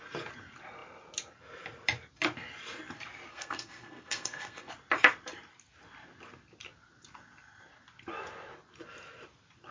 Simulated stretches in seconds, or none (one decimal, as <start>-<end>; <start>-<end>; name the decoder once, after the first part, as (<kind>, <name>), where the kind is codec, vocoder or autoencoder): 3.3-4.7 (codec, SNAC)